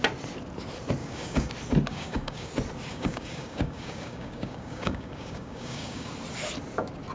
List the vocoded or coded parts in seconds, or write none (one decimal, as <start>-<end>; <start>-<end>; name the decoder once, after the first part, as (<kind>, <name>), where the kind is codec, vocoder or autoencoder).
1.0-1.5 (codec, DAC); 1.9-2.5; 2.9-6.1